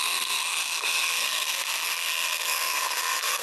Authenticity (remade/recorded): remade